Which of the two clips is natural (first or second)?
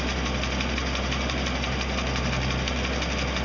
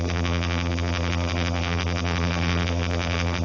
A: first